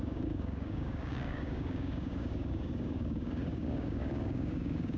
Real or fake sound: fake